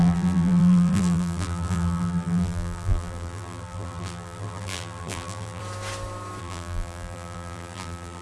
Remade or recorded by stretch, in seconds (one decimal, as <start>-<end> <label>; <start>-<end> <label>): 0.0-5.6 remade; 5.6-6.4 recorded; 6.4-8.2 remade